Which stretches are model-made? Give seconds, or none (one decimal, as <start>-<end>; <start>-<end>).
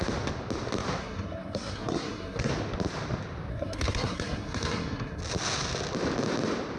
1.0-2.5; 3.5-5.2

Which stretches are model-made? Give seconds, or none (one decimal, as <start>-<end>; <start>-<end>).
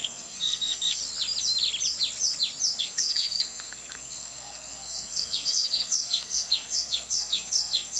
0.0-1.0; 2.8-8.0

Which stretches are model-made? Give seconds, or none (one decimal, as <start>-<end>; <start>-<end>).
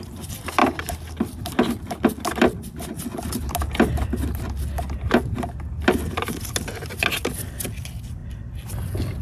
none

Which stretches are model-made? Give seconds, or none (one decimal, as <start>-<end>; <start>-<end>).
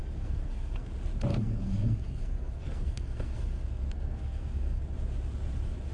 0.0-0.9; 1.3-4.8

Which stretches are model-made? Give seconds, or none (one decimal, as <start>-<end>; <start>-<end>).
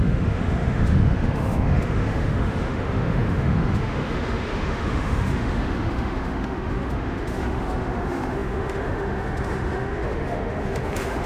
0.0-11.3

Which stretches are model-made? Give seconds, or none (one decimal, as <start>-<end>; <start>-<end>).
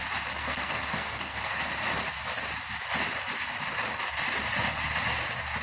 0.4-1.6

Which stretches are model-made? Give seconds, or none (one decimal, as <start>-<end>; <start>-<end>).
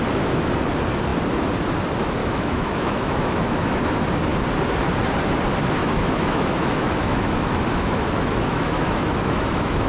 2.2-3.9; 5.8-9.9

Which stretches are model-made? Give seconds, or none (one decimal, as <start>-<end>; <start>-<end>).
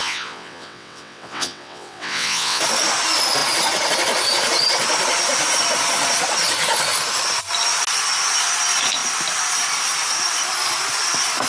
0.0-2.6